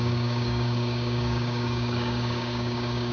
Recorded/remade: remade